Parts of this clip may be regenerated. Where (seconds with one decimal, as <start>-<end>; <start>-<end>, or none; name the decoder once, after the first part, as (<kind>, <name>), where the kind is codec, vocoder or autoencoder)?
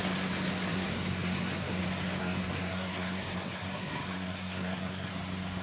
0.7-1.8 (codec, SNAC); 2.2-5.1